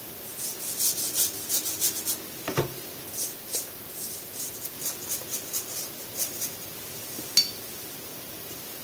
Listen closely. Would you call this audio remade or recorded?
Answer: recorded